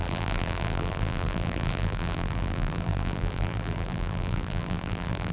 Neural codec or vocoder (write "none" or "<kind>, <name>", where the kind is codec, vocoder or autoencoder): vocoder, BigVGAN v2